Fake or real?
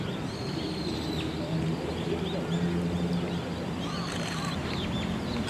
real